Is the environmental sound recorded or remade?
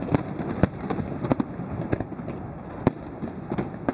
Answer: recorded